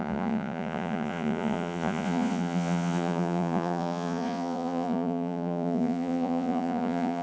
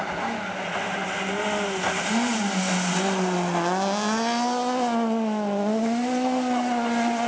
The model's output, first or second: first